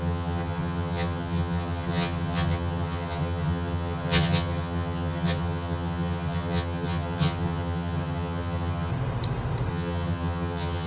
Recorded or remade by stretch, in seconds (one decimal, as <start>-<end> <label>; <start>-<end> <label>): 0.0-8.9 remade; 8.9-9.7 recorded; 9.7-10.9 remade